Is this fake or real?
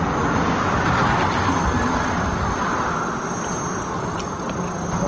real